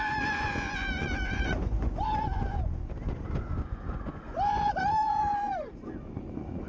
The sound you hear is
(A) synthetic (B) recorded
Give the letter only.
A